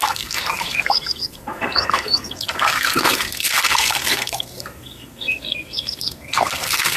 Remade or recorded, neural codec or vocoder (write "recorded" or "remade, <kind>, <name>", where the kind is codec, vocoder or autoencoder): remade, codec, SNAC